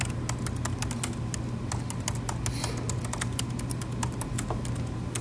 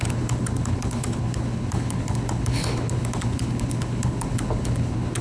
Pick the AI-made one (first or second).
second